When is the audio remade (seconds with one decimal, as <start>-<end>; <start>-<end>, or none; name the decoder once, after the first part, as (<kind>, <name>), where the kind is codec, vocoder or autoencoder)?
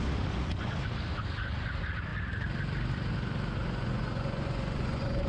3.6-5.3 (vocoder, Vocos)